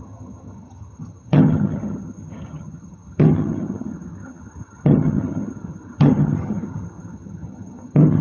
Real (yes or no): no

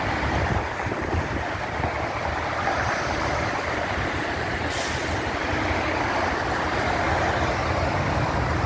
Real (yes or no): yes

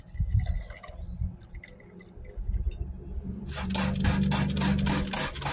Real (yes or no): yes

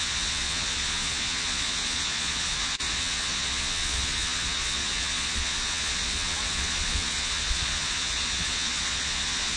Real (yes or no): no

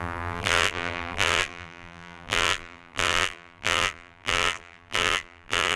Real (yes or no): no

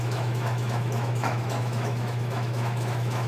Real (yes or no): no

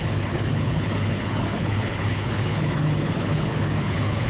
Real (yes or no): no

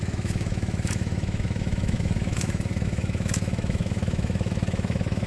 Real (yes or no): no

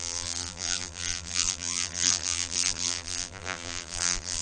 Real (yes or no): no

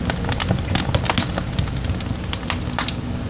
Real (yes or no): yes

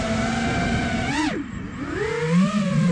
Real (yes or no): yes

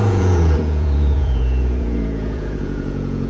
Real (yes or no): no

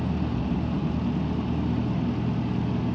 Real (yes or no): yes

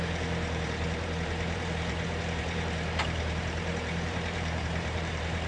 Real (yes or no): no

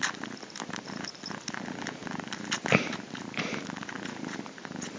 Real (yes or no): yes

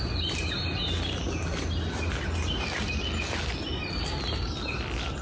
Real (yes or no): yes